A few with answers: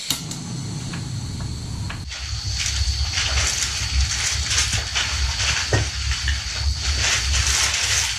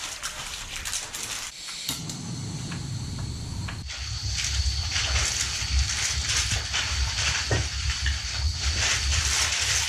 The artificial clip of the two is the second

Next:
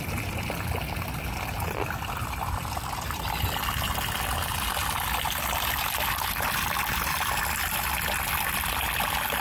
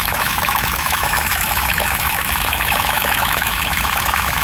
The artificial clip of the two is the second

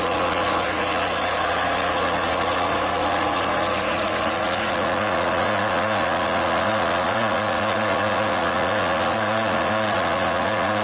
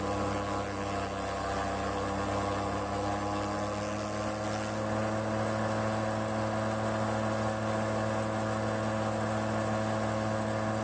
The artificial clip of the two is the first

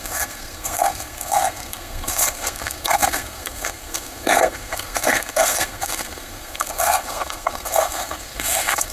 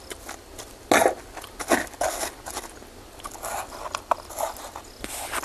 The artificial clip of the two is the first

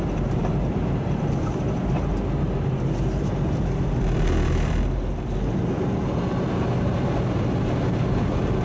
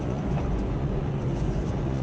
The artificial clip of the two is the second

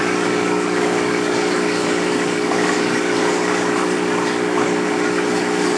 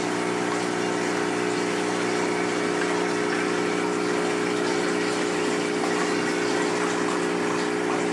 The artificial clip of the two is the first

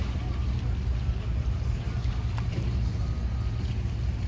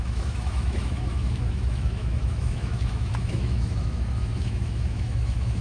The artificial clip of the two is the second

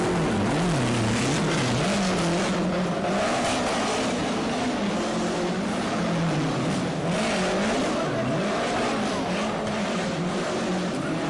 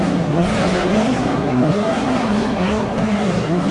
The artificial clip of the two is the second